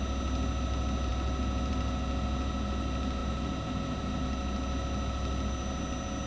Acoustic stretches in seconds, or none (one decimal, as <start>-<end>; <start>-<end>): 0.0-6.3